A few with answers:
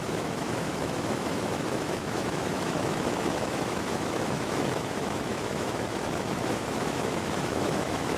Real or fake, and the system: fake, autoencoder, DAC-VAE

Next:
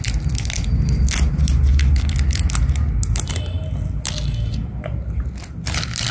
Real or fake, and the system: real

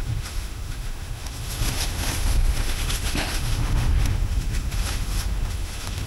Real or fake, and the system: fake, autoencoder, DAC-VAE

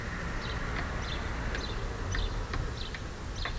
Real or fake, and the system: real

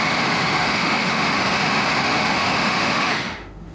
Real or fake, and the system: fake, autoencoder, DAC-VAE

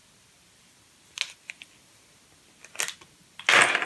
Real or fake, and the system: real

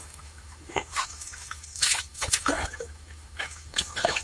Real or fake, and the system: fake, autoencoder, DAC-VAE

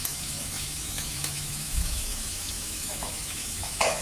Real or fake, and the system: fake, autoencoder, DAC-VAE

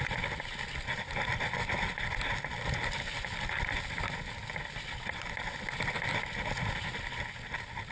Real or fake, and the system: real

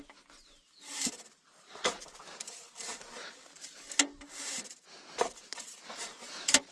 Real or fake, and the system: real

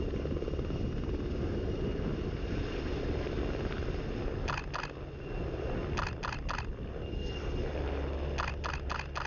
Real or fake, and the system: real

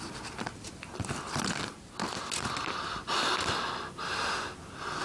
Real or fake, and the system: real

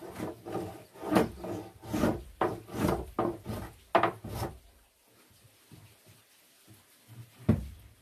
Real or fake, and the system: real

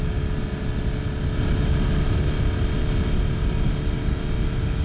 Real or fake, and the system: real